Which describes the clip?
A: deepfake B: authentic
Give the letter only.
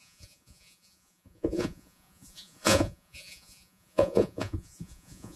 A